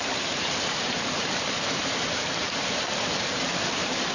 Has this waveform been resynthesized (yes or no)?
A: yes